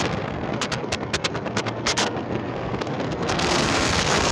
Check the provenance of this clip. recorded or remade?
remade